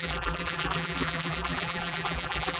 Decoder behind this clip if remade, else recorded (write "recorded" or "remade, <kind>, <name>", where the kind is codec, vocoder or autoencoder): remade, vocoder, BigVGAN v2